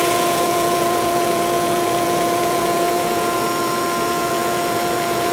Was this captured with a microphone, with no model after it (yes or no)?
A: no